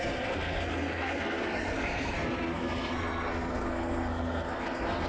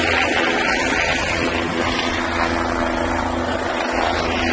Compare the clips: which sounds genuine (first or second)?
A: second